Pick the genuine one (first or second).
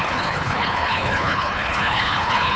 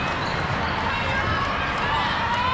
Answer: second